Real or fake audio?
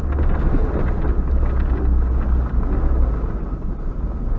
real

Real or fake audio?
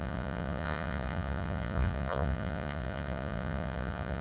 fake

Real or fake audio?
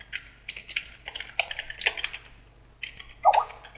real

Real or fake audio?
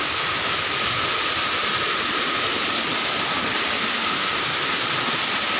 real